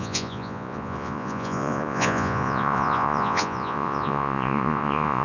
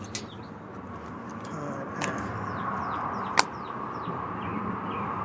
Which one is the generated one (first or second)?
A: first